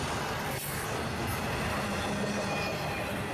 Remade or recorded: recorded